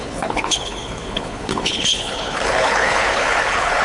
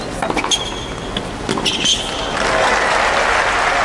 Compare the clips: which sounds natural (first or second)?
second